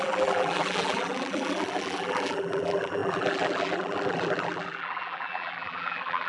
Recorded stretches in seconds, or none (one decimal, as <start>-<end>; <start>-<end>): none